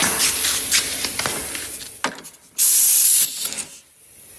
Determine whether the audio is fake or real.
real